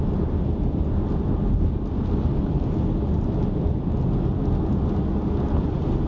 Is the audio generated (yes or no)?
no